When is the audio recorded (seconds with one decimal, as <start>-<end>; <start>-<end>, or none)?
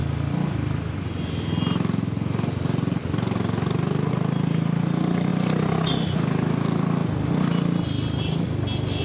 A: 0.0-9.0